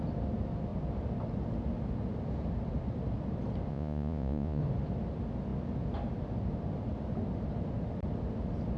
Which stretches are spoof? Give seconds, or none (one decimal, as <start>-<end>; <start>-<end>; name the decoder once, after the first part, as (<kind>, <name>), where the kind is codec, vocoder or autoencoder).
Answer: 3.7-4.6 (vocoder, Vocos)